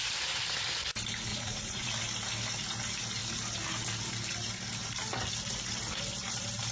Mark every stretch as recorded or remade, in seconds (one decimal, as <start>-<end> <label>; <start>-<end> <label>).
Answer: 0.0-1.3 recorded; 1.3-1.9 remade; 1.9-6.7 recorded